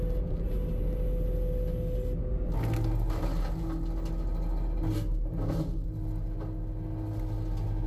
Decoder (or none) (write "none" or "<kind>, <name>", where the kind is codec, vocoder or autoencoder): none